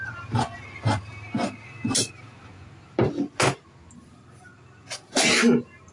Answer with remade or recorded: recorded